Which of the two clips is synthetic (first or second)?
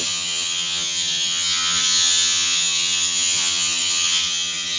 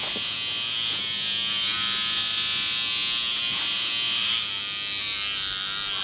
first